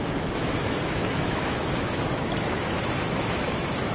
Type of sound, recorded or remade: remade